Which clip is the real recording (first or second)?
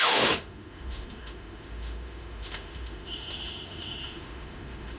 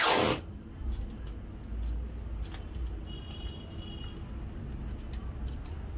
second